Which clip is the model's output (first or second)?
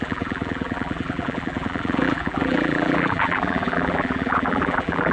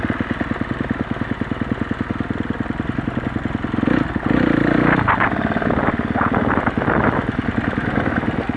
first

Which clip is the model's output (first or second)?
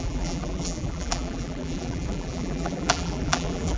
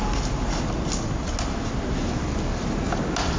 first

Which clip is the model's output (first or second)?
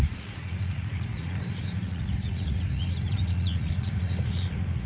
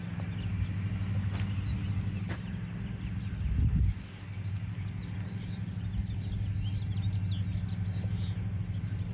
first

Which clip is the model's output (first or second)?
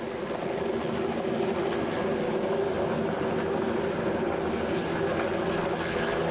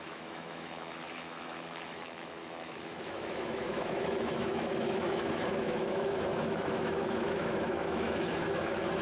second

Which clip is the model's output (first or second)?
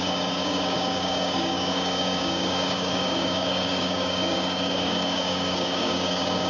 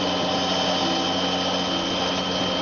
first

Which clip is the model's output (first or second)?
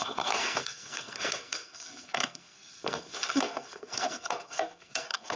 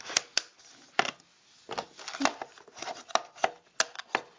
first